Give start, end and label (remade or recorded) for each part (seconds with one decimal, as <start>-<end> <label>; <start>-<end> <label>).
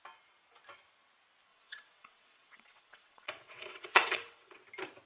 0.0-1.5 recorded; 1.5-4.6 remade; 4.6-5.1 recorded